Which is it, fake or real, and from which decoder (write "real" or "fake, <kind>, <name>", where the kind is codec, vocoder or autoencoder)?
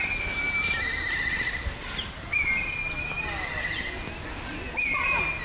real